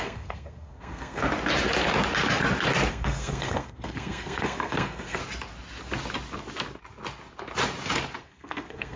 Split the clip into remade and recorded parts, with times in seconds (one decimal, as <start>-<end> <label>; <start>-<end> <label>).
0.0-1.2 remade; 1.2-2.9 recorded; 2.9-5.2 remade; 5.2-8.2 recorded; 8.2-9.0 remade